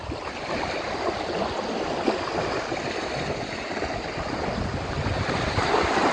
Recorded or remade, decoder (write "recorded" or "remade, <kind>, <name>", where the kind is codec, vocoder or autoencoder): recorded